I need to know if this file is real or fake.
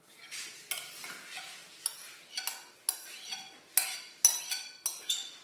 real